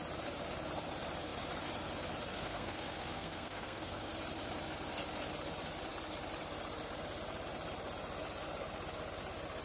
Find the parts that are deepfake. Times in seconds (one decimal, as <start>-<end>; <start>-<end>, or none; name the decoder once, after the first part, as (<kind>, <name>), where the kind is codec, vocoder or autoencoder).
2.3-4.1 (codec, SNAC)